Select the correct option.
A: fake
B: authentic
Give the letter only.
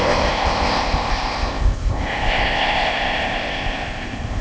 A